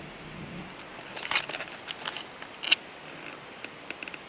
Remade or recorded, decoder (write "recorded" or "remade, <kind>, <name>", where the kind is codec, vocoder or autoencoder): recorded